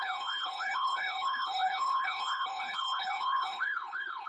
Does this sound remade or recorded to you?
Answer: remade